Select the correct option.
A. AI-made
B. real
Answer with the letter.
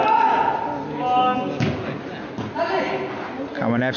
B